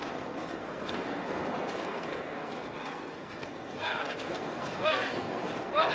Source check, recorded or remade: remade